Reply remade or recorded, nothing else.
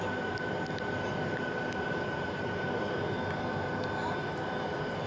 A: recorded